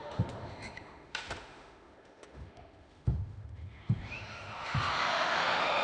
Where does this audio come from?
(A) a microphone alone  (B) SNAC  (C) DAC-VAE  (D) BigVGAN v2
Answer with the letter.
C